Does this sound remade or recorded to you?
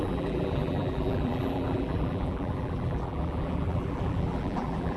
remade